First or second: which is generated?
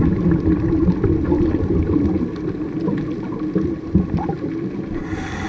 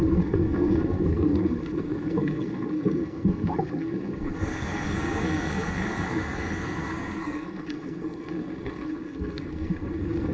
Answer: second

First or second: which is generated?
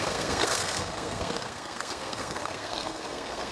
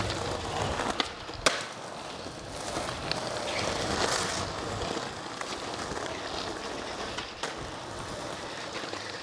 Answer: first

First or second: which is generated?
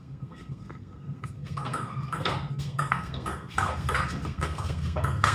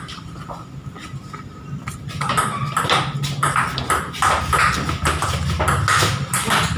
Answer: first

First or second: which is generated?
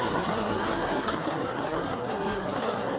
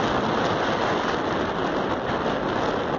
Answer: first